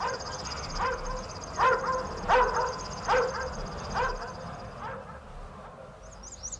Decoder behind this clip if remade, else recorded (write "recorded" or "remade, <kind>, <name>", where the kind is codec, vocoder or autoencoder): recorded